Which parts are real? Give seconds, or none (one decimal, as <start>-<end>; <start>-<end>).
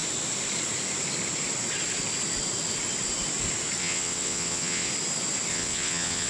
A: 0.0-3.8; 4.9-5.5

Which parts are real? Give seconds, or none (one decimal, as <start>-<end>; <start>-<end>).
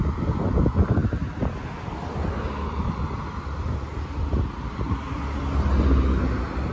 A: 0.0-6.7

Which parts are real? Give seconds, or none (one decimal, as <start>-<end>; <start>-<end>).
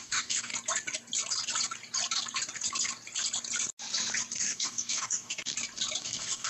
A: 0.5-4.4; 5.5-6.0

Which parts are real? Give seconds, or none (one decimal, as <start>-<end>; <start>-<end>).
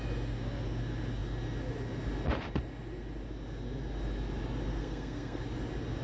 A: 0.0-4.7; 5.4-6.0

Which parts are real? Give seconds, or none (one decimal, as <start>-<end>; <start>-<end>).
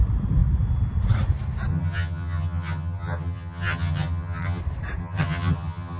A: 0.0-1.7; 4.6-5.0